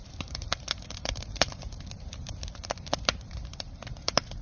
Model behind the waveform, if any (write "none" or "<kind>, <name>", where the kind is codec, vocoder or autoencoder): vocoder, BigVGAN v2